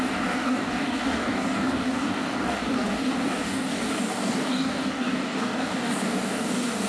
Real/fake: fake